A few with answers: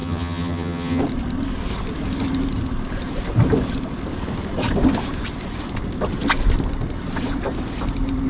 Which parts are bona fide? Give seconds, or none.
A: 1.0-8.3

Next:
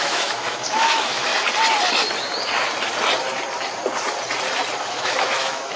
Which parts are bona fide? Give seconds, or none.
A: 1.3-4.8

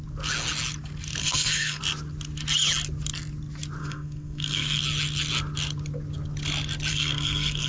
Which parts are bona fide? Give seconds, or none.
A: 0.0-1.2; 1.8-3.8; 4.8-6.9

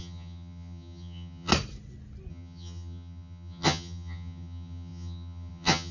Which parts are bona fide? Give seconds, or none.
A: 1.5-2.3

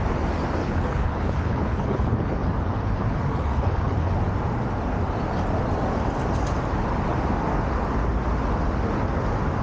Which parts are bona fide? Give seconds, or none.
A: 0.0-0.6; 4.2-9.6

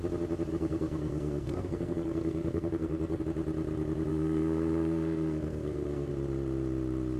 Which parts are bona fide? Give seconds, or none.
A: 0.0-0.5; 3.2-4.1; 6.1-7.2

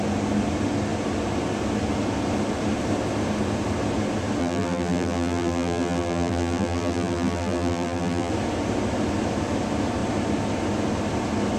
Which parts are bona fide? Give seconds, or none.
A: 0.0-4.4; 8.3-11.6

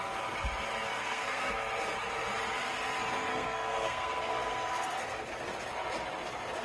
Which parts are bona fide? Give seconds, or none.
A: 0.0-0.9; 1.5-3.3; 5.3-6.6